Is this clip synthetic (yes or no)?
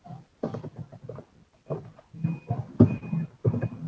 no